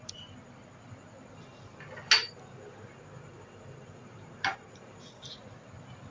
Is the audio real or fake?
real